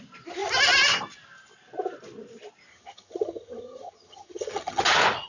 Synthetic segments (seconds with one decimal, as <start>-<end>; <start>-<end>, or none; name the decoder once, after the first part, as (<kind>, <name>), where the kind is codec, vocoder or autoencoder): 2.7-4.8 (vocoder, HiFi-GAN)